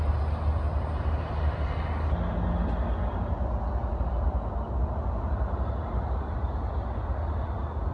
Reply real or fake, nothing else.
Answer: real